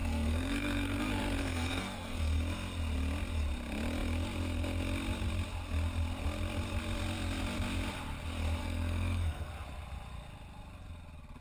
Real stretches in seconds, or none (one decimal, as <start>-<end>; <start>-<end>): 2.3-8.6; 9.5-11.4